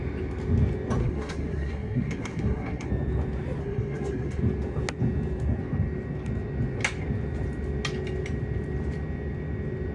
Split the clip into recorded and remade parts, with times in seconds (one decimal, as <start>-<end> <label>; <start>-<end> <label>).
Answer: 0.0-1.0 recorded; 1.0-2.9 remade; 2.9-3.6 recorded; 3.6-4.4 remade; 4.4-9.9 recorded